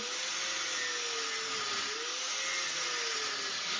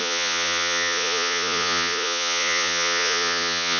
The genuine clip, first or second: first